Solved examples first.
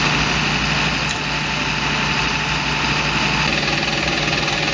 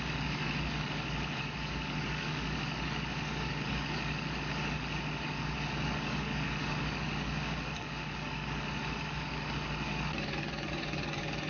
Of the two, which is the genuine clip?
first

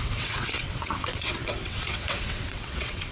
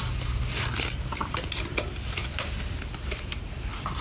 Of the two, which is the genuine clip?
second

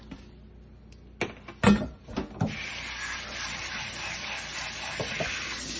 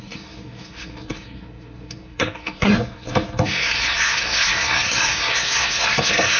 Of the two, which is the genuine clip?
first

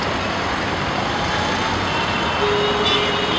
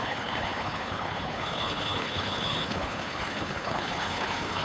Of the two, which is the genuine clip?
first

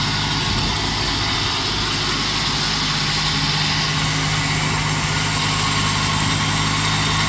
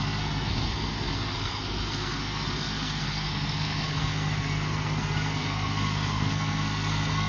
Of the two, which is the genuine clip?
first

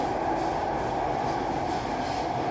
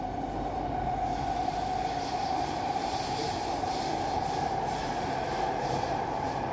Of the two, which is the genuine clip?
first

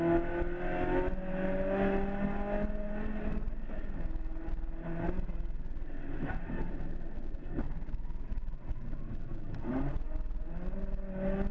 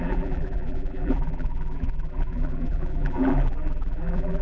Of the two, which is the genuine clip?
first